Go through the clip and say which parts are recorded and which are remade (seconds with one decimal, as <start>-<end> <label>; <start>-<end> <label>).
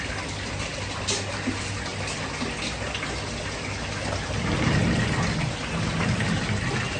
0.0-7.0 recorded